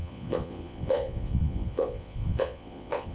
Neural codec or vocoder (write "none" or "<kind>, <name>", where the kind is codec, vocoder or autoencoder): vocoder, Vocos